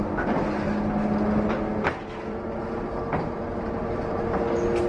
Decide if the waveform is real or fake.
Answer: real